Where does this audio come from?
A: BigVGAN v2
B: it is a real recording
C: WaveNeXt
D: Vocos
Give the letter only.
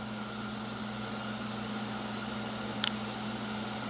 B